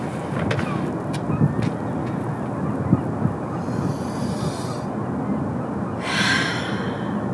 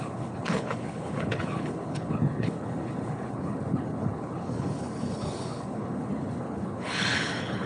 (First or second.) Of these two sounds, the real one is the first